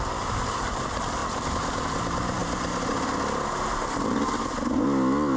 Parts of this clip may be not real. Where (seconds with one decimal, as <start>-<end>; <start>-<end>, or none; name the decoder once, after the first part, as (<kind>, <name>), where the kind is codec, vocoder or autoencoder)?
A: none